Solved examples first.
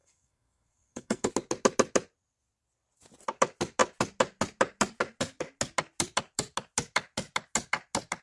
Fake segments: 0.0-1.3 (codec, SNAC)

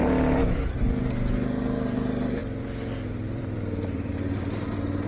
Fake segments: 2.4-4.1 (vocoder, BigVGAN v2)

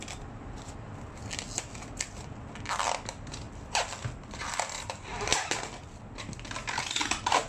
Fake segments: none